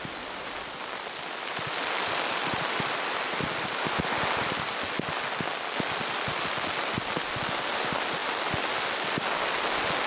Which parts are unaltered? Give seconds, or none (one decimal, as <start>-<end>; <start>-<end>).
0.0-10.1